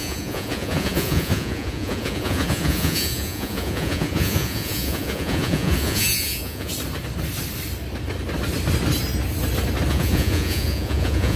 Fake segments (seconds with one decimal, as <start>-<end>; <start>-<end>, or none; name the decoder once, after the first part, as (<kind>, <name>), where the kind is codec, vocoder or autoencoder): 0.0-6.7 (vocoder, Vocos); 9.9-11.4